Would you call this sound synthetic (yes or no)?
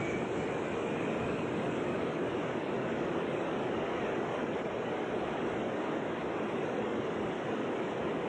yes